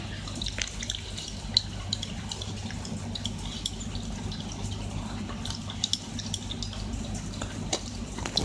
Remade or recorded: recorded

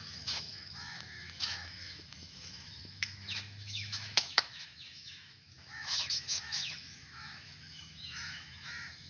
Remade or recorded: remade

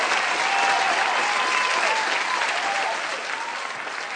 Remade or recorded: recorded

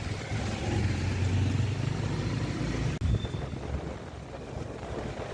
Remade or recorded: recorded